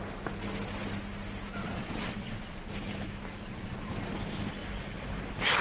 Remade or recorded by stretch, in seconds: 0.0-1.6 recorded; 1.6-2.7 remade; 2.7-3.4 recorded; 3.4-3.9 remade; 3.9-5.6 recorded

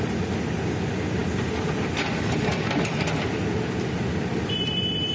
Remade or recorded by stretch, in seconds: 0.0-5.1 recorded

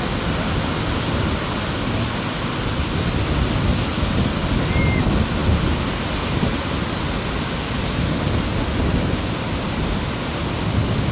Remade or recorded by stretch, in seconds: 0.0-11.1 recorded